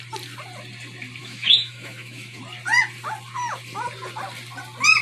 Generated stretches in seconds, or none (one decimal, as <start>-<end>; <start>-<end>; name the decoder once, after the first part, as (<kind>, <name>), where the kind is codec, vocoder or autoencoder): 1.2-2.4 (autoencoder, DAC-VAE)